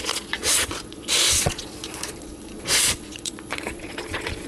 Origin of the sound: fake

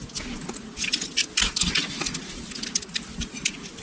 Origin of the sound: real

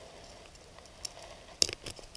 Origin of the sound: real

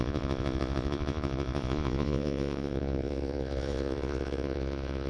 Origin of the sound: fake